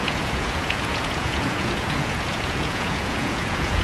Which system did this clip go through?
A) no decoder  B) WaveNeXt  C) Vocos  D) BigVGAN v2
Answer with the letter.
C